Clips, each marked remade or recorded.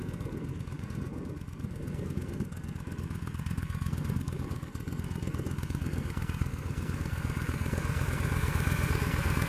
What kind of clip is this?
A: remade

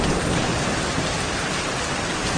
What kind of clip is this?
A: recorded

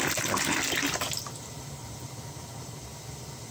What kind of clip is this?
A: recorded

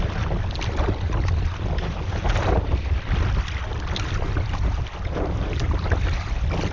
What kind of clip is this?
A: recorded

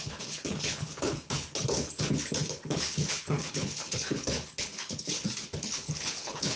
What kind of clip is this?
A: remade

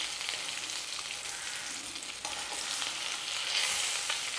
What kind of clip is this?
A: recorded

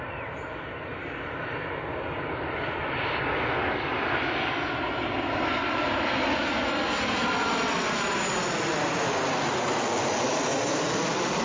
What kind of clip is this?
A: recorded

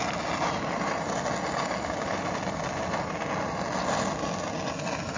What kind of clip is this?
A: recorded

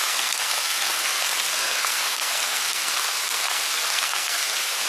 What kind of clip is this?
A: remade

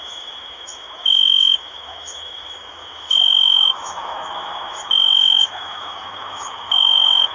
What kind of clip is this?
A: remade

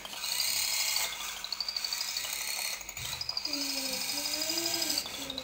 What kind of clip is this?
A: recorded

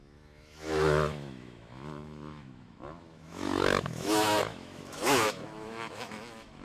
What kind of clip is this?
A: remade